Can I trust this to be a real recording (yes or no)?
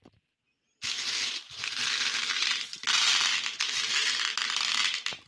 yes